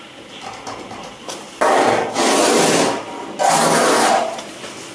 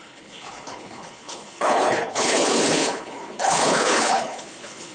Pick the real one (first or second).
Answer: first